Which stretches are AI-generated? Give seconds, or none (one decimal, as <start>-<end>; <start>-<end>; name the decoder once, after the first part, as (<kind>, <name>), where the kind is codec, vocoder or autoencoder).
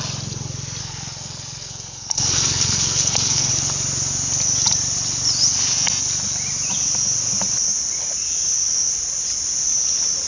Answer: 0.8-3.5 (codec, SNAC)